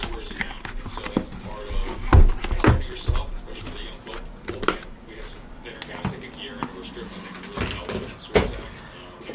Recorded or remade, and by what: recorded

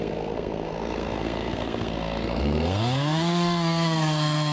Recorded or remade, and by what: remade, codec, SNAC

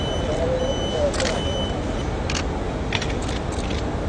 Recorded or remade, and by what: recorded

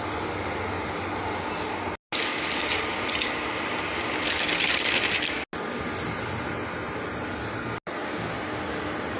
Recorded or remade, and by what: recorded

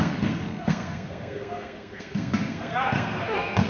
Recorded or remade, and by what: remade, codec, SNAC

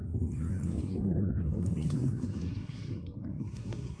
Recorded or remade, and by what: remade, codec, SNAC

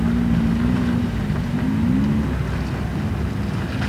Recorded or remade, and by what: recorded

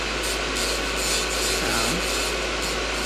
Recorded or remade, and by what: recorded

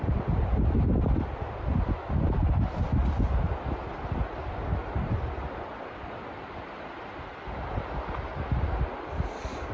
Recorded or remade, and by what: recorded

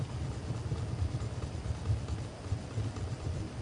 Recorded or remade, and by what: recorded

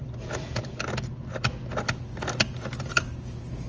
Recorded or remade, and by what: recorded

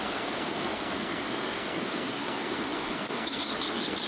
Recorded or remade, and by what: remade, codec, SNAC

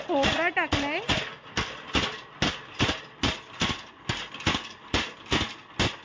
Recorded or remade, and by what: recorded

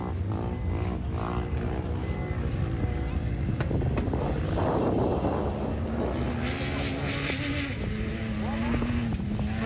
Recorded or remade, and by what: recorded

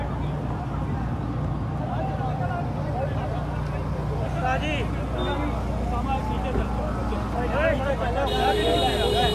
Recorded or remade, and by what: recorded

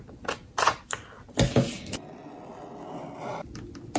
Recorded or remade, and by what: recorded